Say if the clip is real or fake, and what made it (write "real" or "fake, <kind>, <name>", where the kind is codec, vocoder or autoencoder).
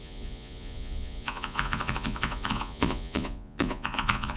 fake, vocoder, Vocos